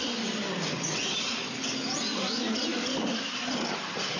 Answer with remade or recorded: recorded